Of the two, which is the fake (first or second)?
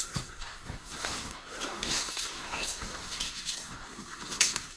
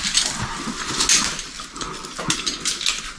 first